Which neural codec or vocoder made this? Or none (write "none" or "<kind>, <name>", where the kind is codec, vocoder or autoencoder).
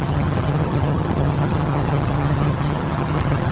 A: vocoder, HiFi-GAN